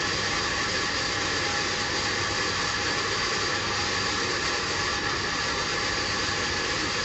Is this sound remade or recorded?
recorded